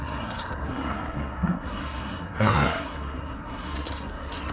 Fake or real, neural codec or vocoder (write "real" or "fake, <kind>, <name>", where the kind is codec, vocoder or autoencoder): fake, codec, SNAC